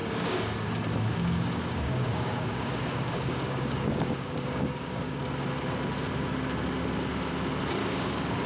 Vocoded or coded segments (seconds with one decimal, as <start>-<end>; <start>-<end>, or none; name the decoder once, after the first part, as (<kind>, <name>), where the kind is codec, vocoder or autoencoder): 0.0-0.7 (codec, DAC); 1.1-5.2; 7.8-8.5